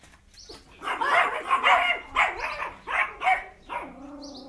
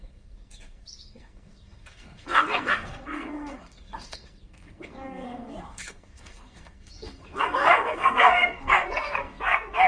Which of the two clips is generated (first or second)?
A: second